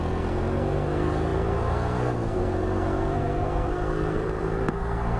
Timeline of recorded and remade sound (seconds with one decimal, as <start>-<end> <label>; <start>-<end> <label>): 0.0-5.2 remade